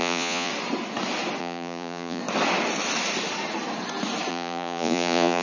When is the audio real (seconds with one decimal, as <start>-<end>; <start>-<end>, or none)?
0.5-1.4; 2.2-4.3